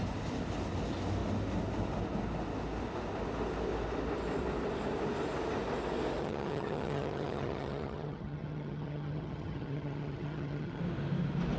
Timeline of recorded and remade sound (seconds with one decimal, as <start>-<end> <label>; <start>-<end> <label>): 0.0-6.2 recorded; 6.2-10.8 remade; 10.8-11.6 recorded